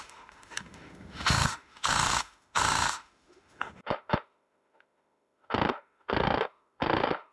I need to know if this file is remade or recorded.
remade